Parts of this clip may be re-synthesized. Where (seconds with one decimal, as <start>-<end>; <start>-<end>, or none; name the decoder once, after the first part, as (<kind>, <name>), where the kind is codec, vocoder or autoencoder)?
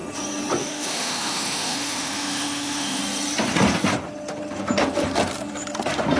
0.6-3.0 (autoencoder, DAC-VAE)